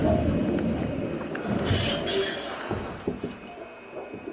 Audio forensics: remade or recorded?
recorded